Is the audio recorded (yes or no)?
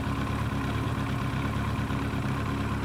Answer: yes